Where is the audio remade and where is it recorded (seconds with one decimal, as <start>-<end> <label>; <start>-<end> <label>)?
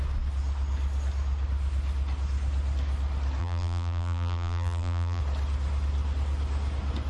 0.0-3.4 recorded; 3.4-5.2 remade; 5.2-7.1 recorded